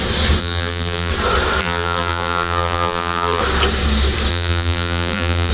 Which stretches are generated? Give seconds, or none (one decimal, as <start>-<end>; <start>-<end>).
0.4-1.1; 1.6-3.4; 4.3-5.5